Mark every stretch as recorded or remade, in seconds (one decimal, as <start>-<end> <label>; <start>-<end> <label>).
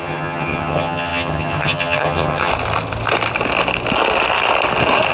0.0-2.5 remade; 2.5-5.1 recorded